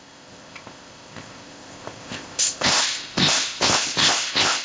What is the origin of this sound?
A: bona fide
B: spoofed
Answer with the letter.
B